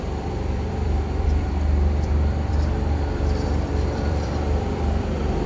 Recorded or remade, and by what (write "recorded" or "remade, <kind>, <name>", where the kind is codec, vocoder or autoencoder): remade, vocoder, BigVGAN v2